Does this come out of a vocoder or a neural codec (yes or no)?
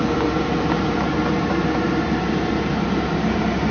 yes